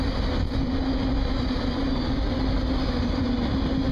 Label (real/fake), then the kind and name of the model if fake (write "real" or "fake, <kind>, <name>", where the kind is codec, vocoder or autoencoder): real